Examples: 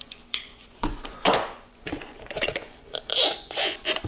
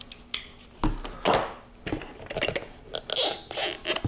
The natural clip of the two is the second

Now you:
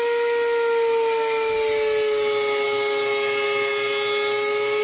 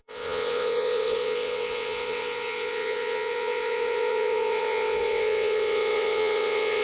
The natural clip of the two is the first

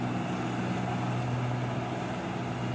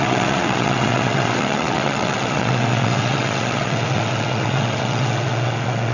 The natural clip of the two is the first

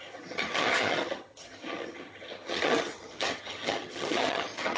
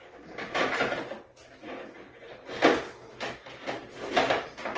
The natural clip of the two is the second